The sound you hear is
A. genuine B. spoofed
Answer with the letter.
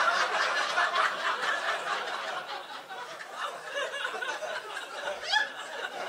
A